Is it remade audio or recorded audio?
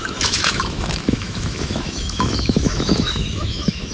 remade